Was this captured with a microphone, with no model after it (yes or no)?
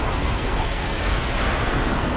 no